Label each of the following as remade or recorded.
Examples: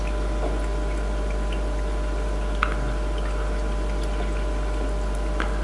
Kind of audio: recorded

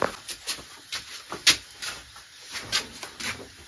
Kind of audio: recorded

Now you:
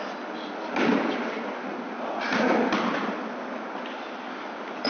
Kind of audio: recorded